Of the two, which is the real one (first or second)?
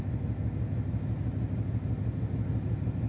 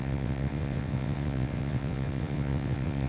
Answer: first